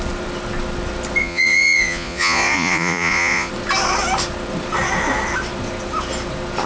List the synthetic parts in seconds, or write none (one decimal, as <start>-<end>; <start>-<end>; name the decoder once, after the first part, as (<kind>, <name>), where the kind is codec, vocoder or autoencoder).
1.2-3.5 (vocoder, Vocos)